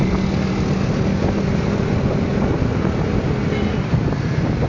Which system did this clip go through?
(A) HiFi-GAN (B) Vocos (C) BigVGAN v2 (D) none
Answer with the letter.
D